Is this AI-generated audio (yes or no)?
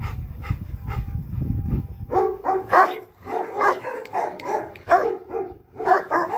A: yes